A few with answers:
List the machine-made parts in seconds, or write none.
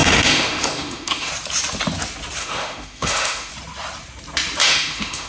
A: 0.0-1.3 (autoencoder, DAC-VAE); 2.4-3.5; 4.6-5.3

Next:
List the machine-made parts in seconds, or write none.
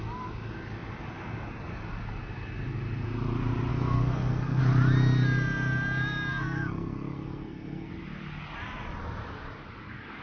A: 3.7-4.6 (codec, SNAC); 6.3-7.9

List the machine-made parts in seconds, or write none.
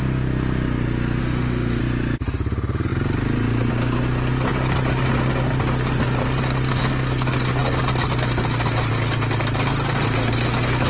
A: 1.2-1.8 (autoencoder, DAC-VAE)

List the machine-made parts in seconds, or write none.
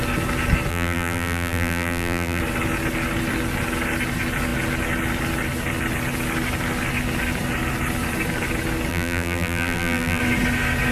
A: 0.7-2.4 (vocoder, BigVGAN v2); 8.9-10.2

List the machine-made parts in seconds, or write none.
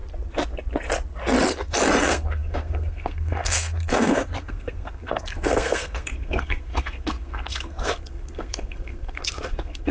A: 2.0-9.9 (codec, SNAC)